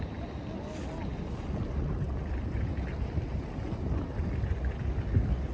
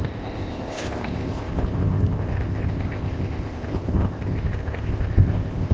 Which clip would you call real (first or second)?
first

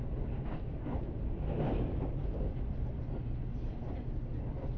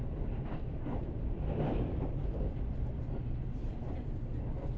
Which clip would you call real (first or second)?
first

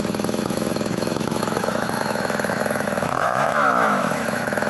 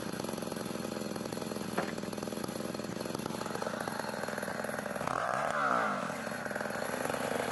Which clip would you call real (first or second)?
second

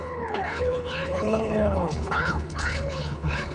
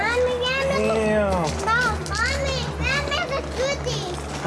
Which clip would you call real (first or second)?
second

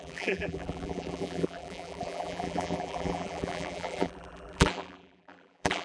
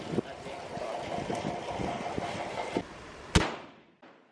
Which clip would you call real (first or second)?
second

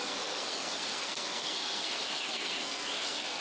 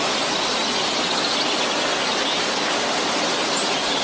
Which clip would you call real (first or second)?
second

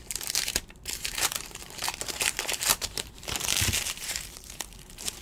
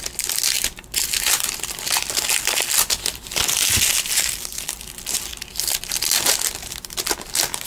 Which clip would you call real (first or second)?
second